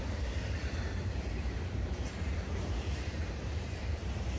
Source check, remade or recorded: remade